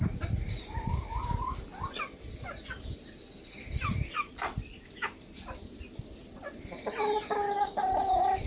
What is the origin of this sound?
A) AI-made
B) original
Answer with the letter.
B